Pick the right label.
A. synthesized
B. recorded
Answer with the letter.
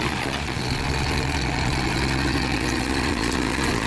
A